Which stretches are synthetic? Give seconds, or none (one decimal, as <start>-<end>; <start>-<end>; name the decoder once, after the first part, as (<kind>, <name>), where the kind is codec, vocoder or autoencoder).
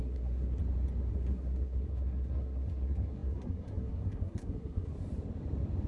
0.0-0.6 (codec, SNAC); 1.1-4.9